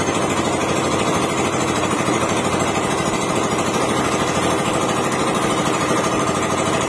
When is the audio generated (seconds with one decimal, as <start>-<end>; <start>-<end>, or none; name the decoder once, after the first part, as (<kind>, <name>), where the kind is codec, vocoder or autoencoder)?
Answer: 0.6-3.3 (vocoder, BigVGAN v2)